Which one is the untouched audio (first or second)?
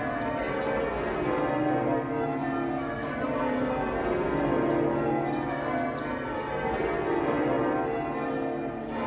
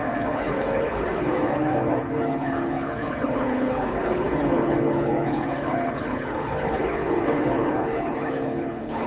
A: first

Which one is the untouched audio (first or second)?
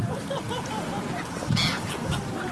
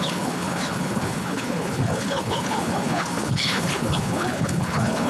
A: first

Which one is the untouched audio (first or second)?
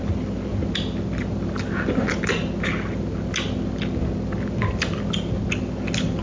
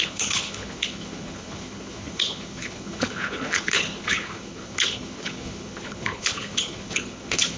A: first